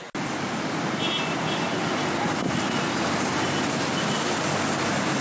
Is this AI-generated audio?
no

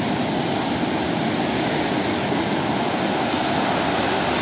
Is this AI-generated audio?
no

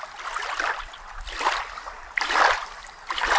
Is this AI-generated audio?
no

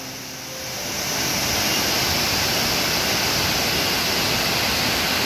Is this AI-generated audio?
no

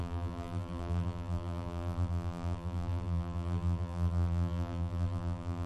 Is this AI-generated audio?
yes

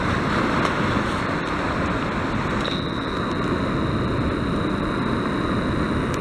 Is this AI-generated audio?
no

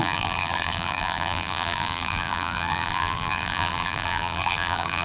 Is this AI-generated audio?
yes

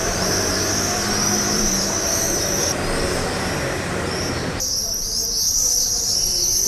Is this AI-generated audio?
yes